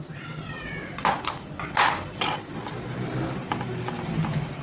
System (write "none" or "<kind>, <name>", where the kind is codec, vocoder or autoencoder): none